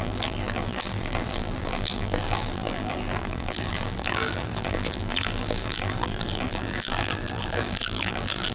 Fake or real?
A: fake